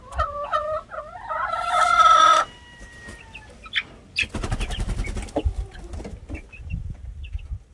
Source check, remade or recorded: recorded